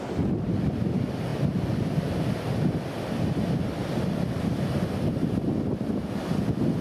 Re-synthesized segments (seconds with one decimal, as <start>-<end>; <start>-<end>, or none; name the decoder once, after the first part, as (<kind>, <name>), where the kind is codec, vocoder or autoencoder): none